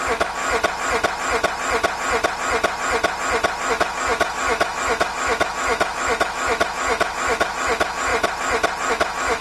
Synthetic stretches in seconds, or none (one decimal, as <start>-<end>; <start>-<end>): 0.0-0.4; 3.7-8.1; 8.9-9.4